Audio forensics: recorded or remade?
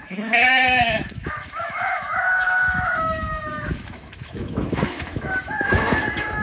remade